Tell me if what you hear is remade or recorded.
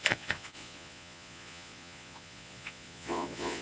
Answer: remade